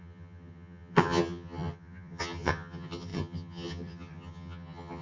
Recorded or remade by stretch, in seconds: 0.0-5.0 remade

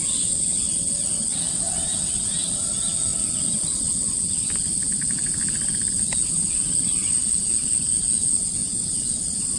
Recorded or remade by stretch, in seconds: 0.0-9.6 recorded

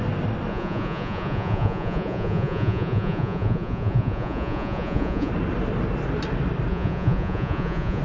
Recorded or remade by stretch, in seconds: 0.0-0.5 recorded; 0.5-5.3 remade; 5.3-6.7 recorded; 6.7-8.0 remade

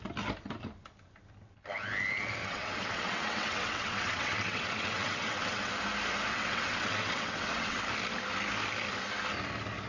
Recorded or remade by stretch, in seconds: 0.0-2.4 recorded; 2.4-5.7 remade; 5.7-6.3 recorded; 6.3-7.8 remade; 7.8-9.9 recorded

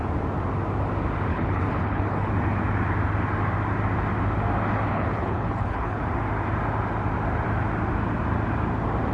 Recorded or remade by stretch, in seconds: 0.0-1.3 recorded; 1.3-2.3 remade; 2.3-4.9 recorded; 4.9-6.0 remade; 6.0-9.1 recorded

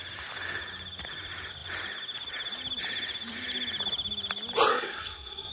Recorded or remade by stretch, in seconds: 0.0-4.7 recorded; 4.7-5.5 remade

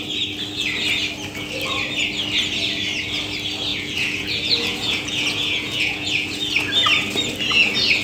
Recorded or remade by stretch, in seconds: 0.0-3.7 recorded; 3.7-6.4 remade; 6.4-8.0 recorded